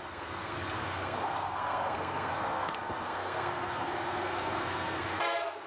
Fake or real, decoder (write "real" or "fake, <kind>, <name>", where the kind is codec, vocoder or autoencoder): fake, codec, SNAC